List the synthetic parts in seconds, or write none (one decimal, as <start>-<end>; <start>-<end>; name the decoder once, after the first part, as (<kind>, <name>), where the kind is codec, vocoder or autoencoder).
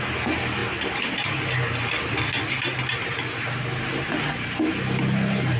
none